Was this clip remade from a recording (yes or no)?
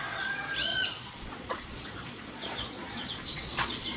yes